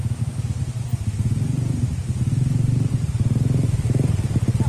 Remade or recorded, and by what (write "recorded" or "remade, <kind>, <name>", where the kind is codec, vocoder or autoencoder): recorded